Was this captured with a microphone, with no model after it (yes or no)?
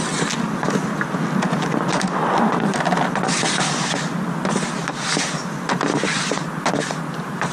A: yes